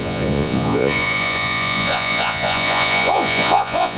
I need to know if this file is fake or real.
fake